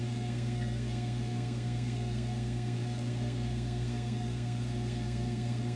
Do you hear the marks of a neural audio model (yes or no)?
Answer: yes